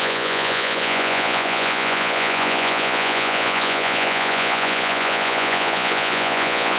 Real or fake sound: fake